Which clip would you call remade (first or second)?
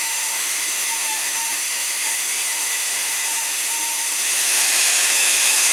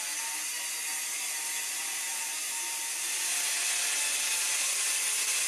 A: first